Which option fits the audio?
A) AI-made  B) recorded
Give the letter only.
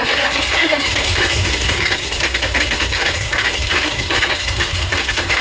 A